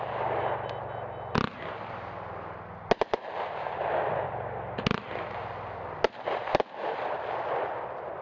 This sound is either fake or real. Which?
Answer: real